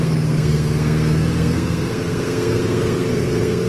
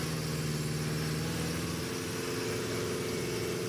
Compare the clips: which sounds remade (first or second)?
first